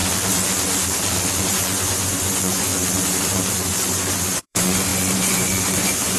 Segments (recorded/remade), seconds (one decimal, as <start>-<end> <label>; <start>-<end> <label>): 0.0-1.4 recorded; 1.4-2.7 remade; 2.7-3.5 recorded; 3.5-6.2 remade